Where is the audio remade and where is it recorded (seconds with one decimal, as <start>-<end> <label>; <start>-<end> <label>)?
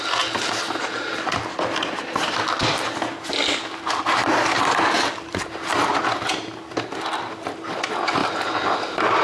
0.0-4.2 recorded; 4.2-5.4 remade; 5.4-8.2 recorded; 8.2-9.2 remade